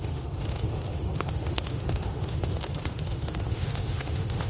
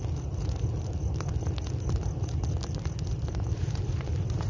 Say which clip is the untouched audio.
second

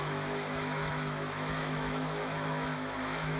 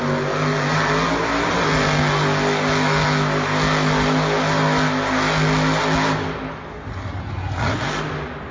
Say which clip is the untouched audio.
second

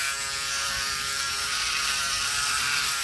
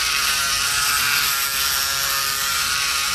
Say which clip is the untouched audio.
second